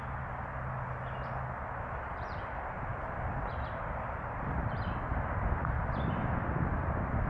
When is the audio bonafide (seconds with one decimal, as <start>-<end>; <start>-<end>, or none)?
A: 0.0-7.3